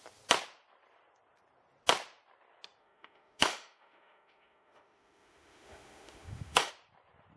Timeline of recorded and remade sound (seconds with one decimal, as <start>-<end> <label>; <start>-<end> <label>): 0.0-2.8 recorded; 2.8-6.7 remade; 6.7-7.4 recorded